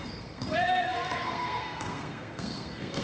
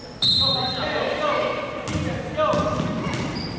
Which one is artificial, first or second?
first